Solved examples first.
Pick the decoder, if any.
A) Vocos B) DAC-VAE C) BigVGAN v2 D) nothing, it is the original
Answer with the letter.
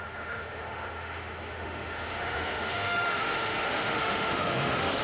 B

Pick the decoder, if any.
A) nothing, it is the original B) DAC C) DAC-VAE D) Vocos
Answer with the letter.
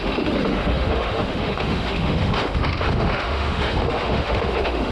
C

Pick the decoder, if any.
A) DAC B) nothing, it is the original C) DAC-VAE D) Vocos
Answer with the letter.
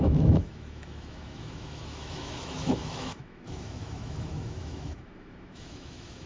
C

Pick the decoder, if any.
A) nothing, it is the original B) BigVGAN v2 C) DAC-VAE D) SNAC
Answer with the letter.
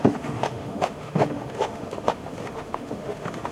C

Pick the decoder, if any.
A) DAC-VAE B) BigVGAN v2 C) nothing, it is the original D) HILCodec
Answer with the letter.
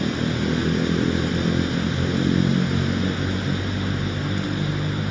C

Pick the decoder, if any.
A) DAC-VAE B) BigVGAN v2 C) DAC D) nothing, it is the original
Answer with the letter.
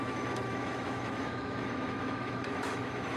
A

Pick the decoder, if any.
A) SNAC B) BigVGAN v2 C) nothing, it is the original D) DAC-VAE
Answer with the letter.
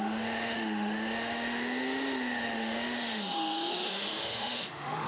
D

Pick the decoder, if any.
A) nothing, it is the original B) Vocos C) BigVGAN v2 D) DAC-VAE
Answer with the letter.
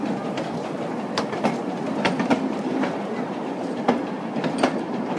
A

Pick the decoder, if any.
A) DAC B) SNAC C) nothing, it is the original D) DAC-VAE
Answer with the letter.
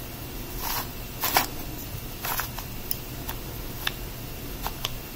C